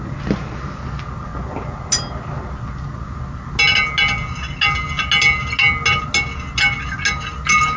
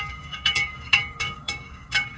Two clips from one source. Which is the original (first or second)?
first